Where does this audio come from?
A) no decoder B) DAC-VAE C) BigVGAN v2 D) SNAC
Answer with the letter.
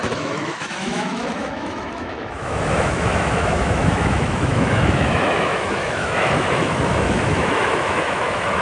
B